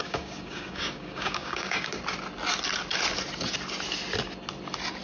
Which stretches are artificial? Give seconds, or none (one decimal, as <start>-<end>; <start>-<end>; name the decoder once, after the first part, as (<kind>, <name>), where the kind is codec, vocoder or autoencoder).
0.0-2.0 (codec, DAC)